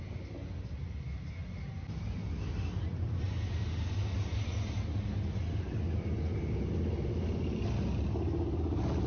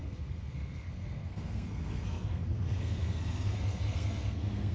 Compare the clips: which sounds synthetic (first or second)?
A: second